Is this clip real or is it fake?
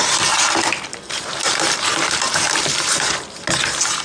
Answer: real